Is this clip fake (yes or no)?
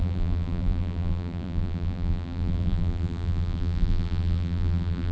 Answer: yes